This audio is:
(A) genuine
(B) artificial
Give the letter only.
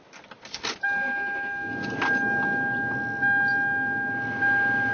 A